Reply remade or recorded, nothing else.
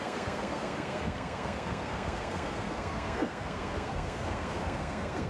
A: remade